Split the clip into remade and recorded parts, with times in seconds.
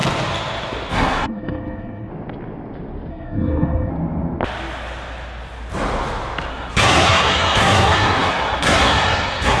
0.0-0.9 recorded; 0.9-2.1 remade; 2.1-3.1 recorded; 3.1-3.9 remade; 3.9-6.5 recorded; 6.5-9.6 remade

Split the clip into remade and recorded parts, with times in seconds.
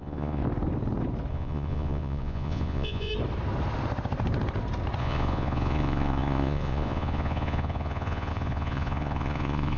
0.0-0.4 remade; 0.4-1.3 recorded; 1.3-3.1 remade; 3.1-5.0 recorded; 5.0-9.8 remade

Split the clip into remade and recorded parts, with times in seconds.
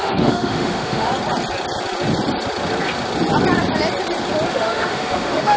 0.0-1.1 remade; 1.1-4.5 recorded; 4.5-5.6 remade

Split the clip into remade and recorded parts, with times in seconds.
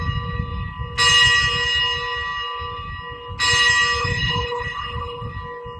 0.0-4.0 recorded; 4.0-5.3 remade; 5.3-5.8 recorded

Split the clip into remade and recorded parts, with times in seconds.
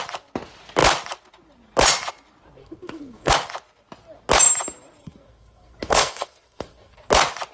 0.0-2.6 recorded; 2.6-3.3 remade; 3.3-5.0 recorded; 5.0-7.1 remade; 7.1-7.5 recorded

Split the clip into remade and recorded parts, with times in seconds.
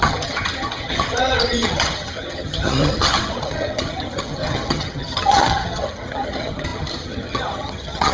0.0-8.1 remade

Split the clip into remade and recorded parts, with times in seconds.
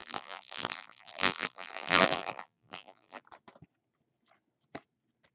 0.0-3.2 remade; 3.2-5.3 recorded